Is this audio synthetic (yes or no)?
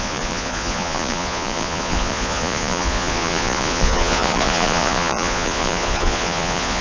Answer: yes